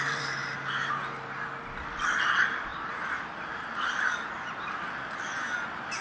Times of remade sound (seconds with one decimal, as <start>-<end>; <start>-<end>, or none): 0.0-0.4; 2.1-6.0